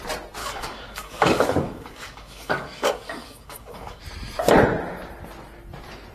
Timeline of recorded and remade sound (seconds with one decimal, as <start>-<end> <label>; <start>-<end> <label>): 0.0-0.4 recorded; 0.4-4.0 remade; 4.0-6.1 recorded